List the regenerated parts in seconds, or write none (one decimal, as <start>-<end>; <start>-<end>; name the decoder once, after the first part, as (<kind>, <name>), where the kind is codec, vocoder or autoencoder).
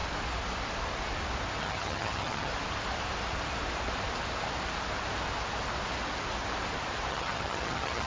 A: 1.6-2.5 (vocoder, HiFi-GAN); 7.1-8.1